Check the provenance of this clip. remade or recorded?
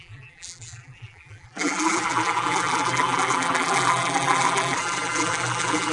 remade